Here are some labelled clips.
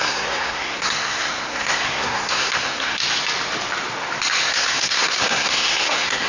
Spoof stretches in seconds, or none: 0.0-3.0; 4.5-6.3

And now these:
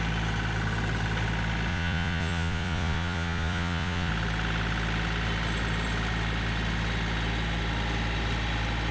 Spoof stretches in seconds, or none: 1.7-4.1

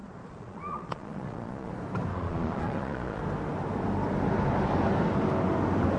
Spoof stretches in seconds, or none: 0.0-1.7; 2.1-3.2